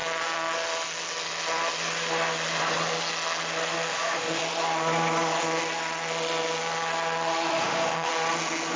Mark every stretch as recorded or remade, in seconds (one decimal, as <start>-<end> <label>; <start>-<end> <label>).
0.0-3.9 recorded; 3.9-4.4 remade; 4.4-7.5 recorded; 7.5-8.1 remade; 8.1-8.8 recorded